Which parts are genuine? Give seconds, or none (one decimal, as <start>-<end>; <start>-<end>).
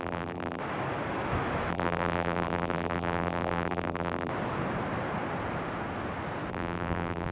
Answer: 0.6-1.7; 4.3-6.5